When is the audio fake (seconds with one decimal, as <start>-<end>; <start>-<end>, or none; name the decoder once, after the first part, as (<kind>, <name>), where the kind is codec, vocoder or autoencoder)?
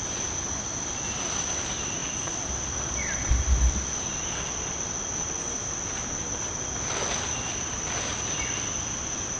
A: none